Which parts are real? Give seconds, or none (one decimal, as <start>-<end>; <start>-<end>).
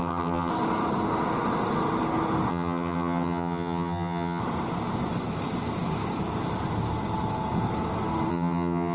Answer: 0.5-2.5; 4.4-8.3